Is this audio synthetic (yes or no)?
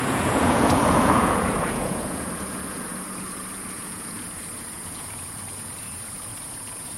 yes